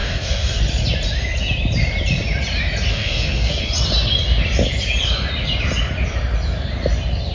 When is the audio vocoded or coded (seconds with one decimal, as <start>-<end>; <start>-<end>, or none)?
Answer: 0.0-0.6; 2.9-3.6